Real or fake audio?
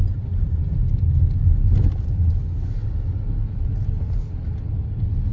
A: real